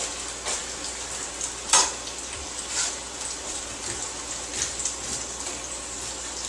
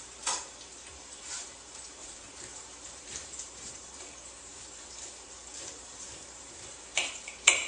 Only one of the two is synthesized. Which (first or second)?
second